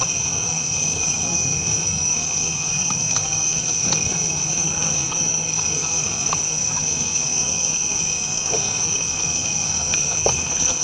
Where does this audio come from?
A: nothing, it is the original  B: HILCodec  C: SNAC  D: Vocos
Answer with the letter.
C